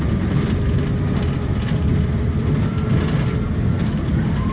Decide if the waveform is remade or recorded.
recorded